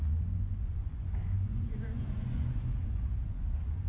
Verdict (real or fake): fake